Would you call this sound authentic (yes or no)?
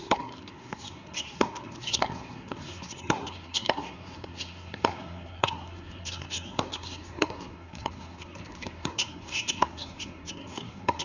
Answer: no